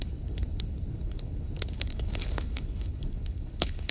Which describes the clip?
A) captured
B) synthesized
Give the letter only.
B